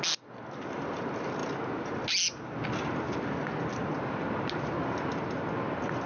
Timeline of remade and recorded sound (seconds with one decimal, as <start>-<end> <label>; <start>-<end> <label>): 0.0-6.1 recorded